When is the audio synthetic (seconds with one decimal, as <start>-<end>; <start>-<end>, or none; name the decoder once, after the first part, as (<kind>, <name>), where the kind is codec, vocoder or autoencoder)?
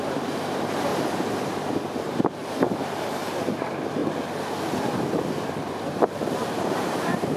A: 0.0-0.9 (vocoder, BigVGAN v2); 2.0-2.4; 3.1-4.0; 6.3-7.4